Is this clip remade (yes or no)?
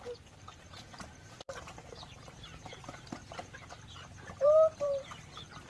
yes